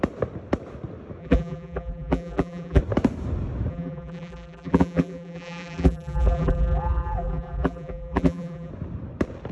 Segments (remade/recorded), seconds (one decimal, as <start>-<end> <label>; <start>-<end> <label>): 0.0-1.2 recorded; 1.2-2.8 remade; 2.8-3.7 recorded; 3.7-8.7 remade; 8.7-9.5 recorded